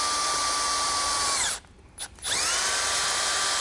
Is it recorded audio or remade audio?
recorded